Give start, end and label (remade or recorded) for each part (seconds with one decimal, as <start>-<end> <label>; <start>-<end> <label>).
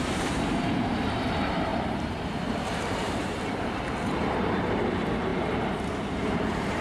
0.0-6.8 remade